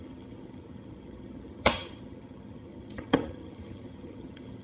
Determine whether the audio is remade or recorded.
remade